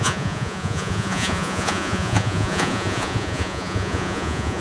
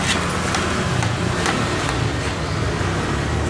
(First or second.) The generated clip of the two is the first